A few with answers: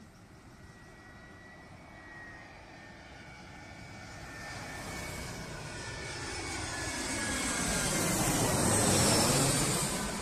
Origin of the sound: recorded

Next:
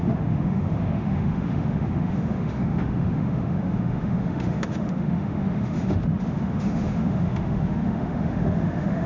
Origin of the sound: remade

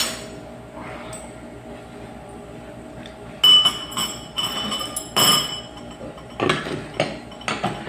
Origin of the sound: recorded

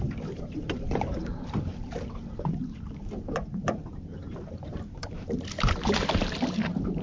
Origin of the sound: remade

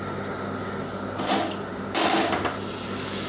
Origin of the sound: recorded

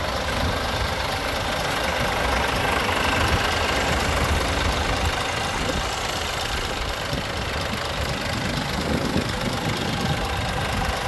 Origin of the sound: recorded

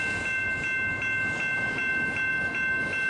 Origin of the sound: recorded